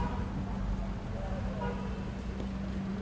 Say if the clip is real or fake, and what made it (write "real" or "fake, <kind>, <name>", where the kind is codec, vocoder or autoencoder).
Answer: real